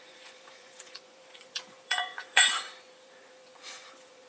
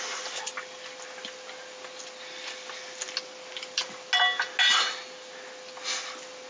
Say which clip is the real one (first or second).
second